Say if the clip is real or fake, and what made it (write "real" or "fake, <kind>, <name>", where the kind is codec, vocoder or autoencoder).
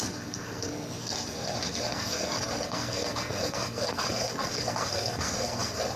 fake, codec, SNAC